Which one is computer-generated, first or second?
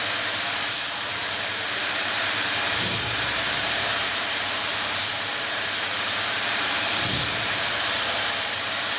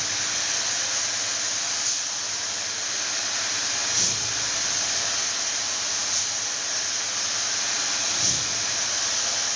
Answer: first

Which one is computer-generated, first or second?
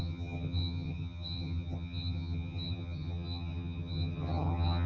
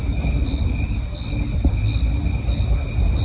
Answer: first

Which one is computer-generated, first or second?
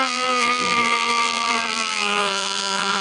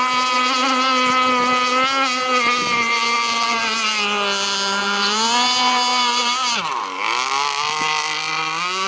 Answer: first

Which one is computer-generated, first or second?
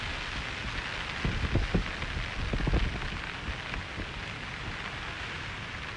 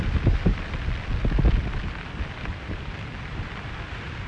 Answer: second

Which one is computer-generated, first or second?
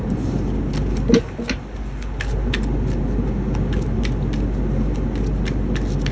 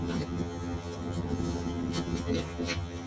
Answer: second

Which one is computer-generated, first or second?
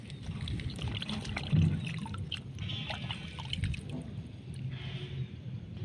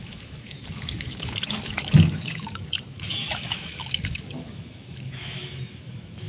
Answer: second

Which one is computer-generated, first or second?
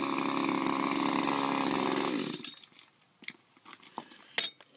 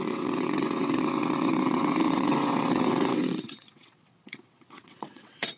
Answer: second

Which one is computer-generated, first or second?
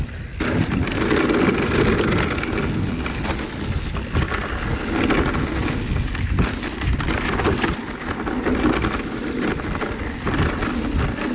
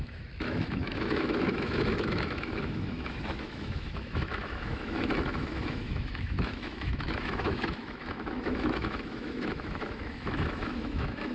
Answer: second